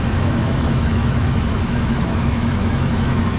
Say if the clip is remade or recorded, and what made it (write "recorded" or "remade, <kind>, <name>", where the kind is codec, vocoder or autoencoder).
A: remade, autoencoder, DAC-VAE